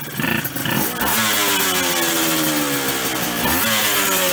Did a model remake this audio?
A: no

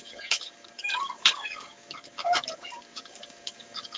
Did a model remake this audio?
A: yes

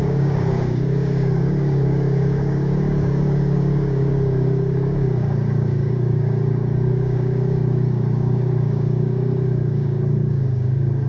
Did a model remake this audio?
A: yes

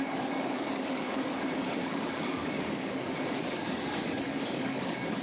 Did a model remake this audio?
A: yes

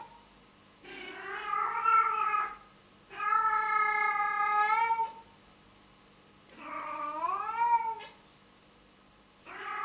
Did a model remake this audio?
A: no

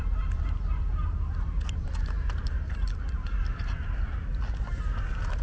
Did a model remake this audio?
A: no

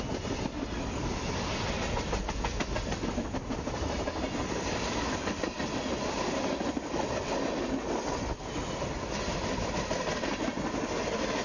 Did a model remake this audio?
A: no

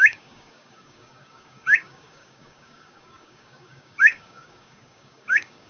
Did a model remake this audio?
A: yes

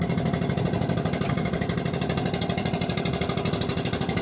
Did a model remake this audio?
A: no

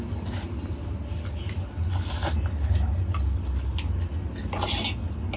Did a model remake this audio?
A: no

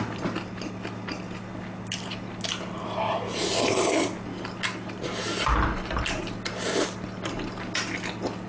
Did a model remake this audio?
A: no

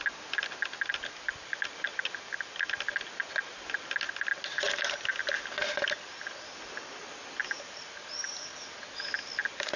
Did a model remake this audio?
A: no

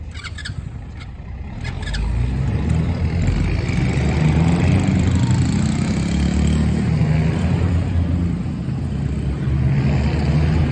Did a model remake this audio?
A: no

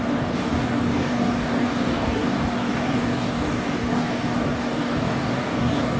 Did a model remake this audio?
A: yes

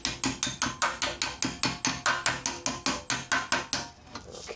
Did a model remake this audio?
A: no